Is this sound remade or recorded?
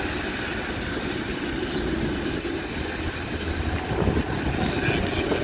recorded